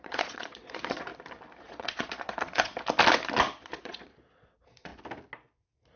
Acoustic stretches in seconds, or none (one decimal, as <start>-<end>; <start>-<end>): 1.1-1.6; 2.7-3.6; 4.9-6.0